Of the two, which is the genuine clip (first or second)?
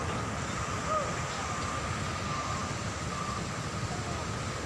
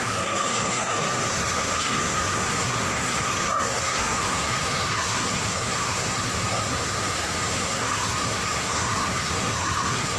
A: first